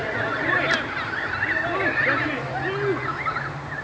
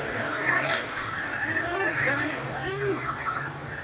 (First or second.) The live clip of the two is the first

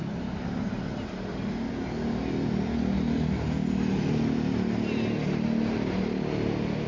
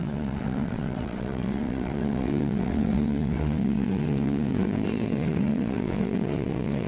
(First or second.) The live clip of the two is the first